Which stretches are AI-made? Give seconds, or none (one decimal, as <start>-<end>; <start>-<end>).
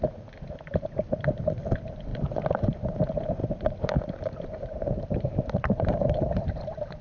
2.1-2.8; 3.4-6.4